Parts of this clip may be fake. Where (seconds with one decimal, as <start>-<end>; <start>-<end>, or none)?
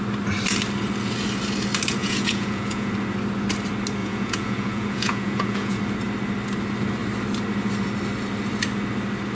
2.0-2.9; 4.0-5.8